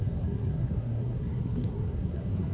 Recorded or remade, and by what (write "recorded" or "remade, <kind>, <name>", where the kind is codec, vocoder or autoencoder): remade, codec, SNAC